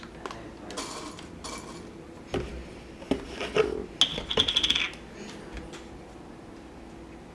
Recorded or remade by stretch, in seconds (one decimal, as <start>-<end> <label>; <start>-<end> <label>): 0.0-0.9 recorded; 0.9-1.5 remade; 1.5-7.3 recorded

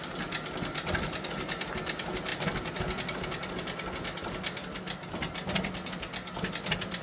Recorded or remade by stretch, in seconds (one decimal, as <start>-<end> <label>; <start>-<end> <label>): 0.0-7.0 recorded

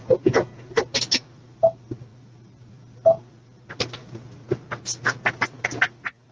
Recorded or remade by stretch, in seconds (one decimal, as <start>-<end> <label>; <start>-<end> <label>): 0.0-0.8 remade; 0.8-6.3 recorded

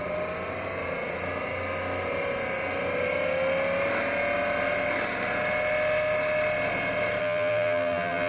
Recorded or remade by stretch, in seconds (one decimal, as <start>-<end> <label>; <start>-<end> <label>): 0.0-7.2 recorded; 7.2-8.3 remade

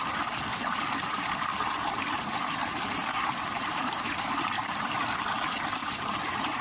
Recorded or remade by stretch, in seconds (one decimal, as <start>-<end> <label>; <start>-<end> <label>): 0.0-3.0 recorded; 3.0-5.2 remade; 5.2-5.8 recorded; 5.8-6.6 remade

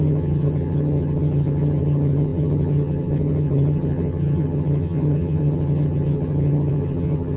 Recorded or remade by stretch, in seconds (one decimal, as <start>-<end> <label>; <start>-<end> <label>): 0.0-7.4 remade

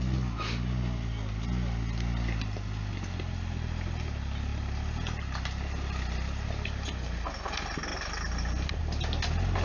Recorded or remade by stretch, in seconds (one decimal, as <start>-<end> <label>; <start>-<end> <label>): 0.0-7.9 recorded; 7.9-8.8 remade; 8.8-9.6 recorded

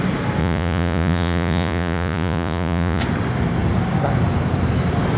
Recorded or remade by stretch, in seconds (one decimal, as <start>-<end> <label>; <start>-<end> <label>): 0.0-0.4 recorded; 0.4-3.0 remade; 3.0-5.2 recorded